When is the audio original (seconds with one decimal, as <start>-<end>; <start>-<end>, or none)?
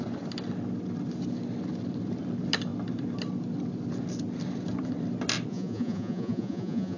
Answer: 0.0-5.5